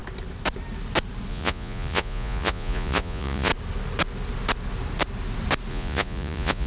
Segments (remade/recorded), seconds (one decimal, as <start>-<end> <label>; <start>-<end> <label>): 0.0-1.3 recorded; 1.3-3.5 remade; 3.5-5.7 recorded; 5.7-6.7 remade